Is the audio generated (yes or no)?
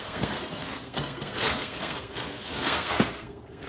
yes